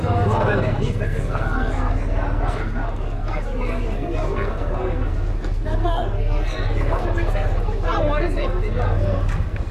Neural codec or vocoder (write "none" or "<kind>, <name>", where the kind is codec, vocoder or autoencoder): codec, SNAC